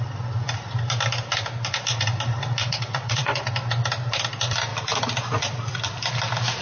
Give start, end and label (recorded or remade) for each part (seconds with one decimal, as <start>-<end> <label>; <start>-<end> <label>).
0.0-2.6 recorded; 2.6-3.5 remade; 3.5-6.6 recorded